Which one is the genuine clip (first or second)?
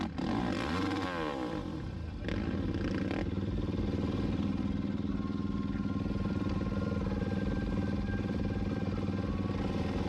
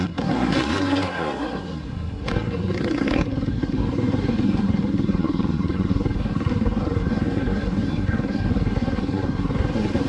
first